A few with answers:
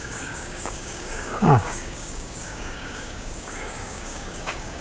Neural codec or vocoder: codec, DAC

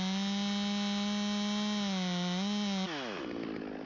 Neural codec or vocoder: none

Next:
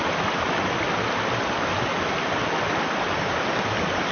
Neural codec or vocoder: none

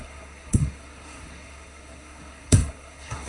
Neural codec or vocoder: codec, SNAC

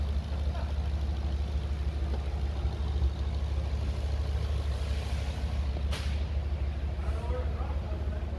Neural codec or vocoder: none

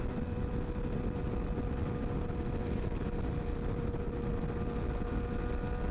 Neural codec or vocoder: none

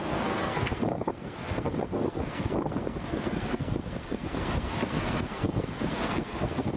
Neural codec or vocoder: codec, SNAC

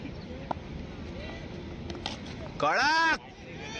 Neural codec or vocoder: none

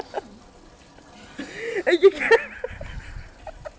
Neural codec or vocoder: none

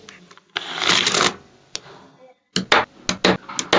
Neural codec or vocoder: none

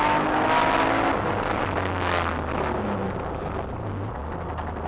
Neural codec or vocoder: none